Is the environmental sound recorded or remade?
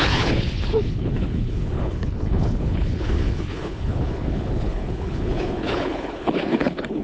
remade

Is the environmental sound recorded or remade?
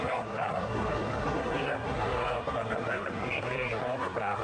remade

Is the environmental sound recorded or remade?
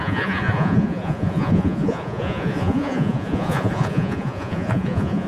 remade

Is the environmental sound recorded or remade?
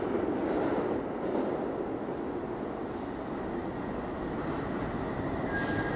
recorded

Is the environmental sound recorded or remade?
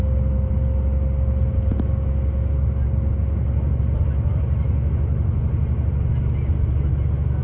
recorded